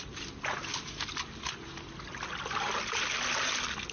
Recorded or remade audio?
recorded